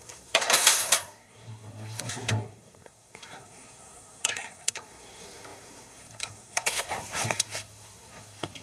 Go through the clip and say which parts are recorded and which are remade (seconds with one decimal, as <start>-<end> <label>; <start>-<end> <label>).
0.0-8.6 remade